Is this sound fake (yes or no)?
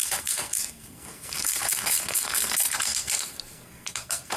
yes